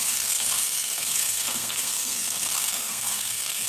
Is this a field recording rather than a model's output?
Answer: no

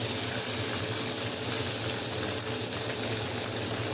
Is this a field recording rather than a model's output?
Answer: yes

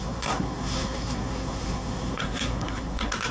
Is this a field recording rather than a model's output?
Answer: no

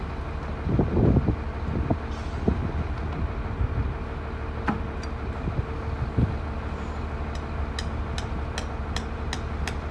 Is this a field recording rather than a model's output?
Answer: yes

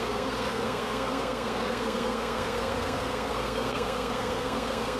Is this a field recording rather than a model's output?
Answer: no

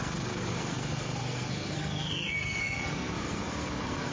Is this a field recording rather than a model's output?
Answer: no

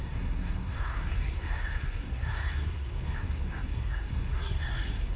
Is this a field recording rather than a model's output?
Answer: no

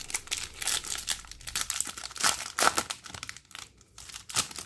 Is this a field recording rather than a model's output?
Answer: yes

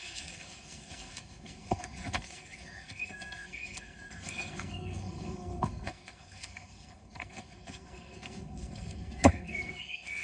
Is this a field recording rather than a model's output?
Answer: no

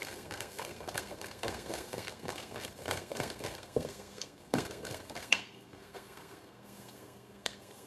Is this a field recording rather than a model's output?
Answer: no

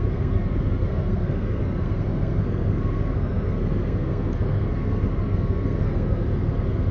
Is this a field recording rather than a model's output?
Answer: no